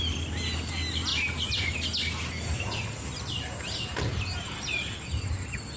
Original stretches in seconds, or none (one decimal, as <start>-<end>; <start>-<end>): 0.0-5.8